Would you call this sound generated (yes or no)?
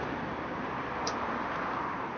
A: no